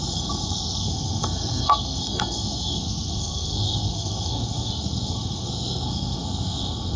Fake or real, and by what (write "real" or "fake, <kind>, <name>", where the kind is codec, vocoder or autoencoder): fake, codec, SNAC